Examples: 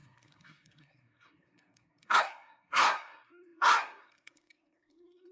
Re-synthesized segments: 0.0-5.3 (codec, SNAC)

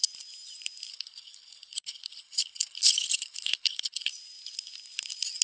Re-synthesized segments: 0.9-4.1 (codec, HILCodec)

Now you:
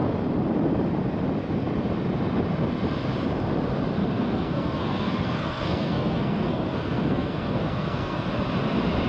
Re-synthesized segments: 4.0-8.3 (codec, SNAC)

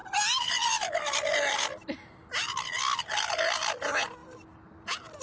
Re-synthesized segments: none